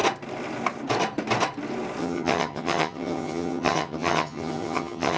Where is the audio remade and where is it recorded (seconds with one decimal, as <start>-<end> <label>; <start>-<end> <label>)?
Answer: 0.0-2.0 recorded; 2.0-5.2 remade